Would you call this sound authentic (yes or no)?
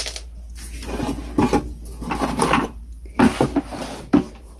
yes